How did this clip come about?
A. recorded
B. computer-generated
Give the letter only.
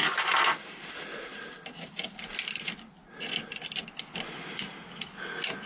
A